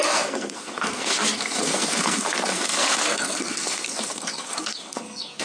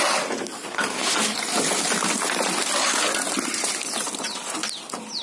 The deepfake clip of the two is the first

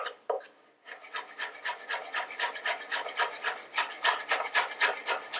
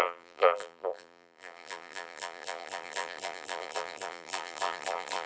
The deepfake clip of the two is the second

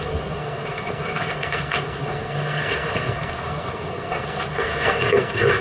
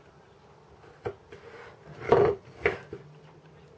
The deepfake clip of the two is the first